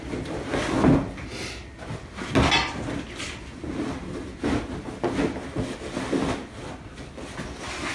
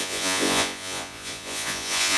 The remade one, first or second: second